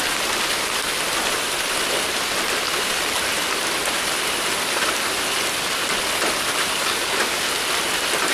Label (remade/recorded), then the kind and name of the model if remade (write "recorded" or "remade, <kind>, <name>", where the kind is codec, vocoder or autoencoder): remade, vocoder, BigVGAN v2